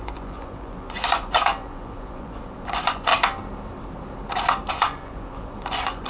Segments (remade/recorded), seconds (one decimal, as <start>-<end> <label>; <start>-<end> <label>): 0.0-3.1 remade; 3.1-4.7 recorded; 4.7-6.1 remade